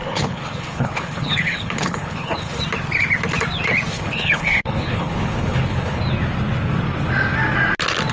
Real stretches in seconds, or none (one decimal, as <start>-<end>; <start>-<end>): 2.6-3.9; 6.0-8.1